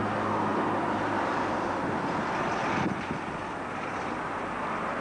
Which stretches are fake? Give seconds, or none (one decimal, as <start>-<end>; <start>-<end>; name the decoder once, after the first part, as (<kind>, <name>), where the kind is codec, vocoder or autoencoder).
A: none